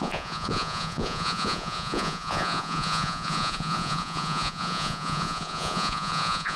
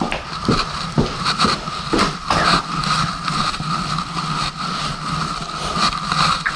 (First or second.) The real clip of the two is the second